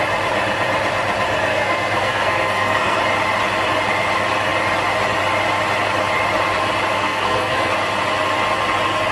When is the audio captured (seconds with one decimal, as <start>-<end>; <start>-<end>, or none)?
0.0-1.5; 3.0-6.9; 7.7-9.1